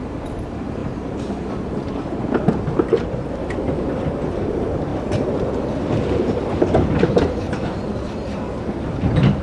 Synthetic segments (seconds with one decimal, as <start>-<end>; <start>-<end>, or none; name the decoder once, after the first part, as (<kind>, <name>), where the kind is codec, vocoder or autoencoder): 0.0-4.9 (vocoder, BigVGAN v2); 6.1-9.4